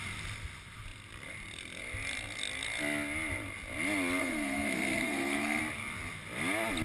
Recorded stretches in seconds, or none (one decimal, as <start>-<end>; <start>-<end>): 0.0-4.2; 5.6-6.8